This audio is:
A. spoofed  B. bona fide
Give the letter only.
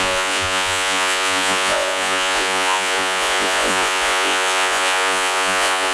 A